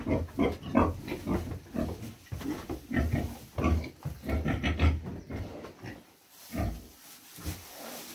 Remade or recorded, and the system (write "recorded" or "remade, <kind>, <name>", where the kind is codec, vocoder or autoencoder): recorded